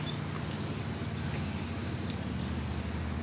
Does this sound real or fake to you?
real